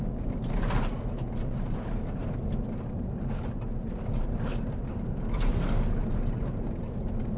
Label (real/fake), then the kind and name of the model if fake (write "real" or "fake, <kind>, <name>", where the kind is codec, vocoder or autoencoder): real